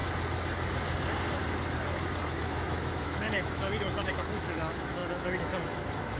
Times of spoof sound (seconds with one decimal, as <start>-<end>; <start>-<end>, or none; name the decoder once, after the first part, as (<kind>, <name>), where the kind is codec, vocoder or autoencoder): 2.3-6.2 (autoencoder, DAC-VAE)